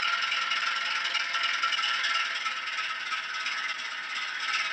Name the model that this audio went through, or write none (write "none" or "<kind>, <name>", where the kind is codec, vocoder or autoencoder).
none